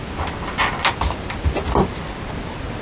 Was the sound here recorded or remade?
recorded